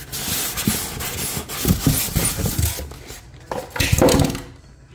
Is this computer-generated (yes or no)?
no